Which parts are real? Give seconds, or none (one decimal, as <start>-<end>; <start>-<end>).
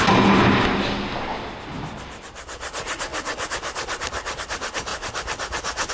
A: 0.0-5.9